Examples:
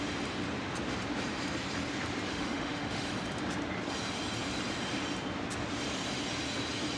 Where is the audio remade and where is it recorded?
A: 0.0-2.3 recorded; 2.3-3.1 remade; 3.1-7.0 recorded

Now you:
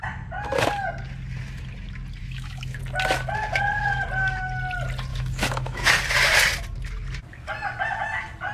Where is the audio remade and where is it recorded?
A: 0.0-2.2 recorded; 2.2-2.8 remade; 2.8-5.1 recorded; 5.1-5.9 remade; 5.9-8.5 recorded

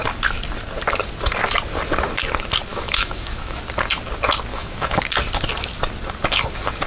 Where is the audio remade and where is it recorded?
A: 0.0-2.7 recorded; 2.7-3.6 remade; 3.6-4.5 recorded; 4.5-5.0 remade; 5.0-6.9 recorded

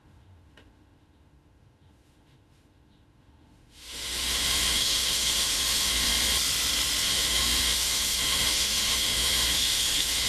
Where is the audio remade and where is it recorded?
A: 0.0-6.1 remade; 6.1-7.0 recorded; 7.0-10.3 remade

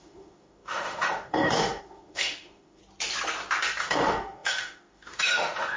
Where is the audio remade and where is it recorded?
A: 0.0-2.8 remade; 2.8-3.8 recorded; 3.8-5.8 remade